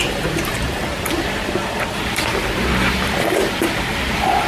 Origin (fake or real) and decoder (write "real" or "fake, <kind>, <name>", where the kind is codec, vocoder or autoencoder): real